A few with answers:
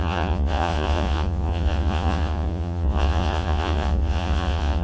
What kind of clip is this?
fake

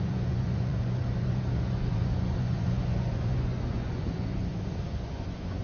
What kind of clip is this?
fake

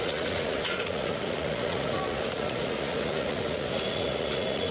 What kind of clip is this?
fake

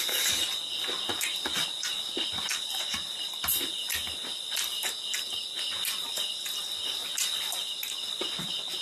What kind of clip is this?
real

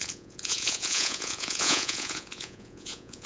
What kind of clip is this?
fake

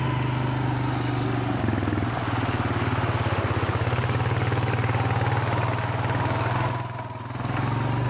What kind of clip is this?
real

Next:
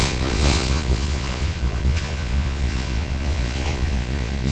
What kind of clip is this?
fake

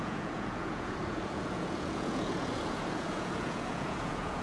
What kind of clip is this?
fake